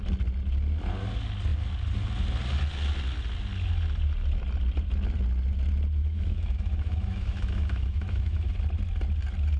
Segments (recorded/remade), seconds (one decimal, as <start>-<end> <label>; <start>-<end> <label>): 0.0-6.0 recorded; 6.0-8.5 remade; 8.5-9.6 recorded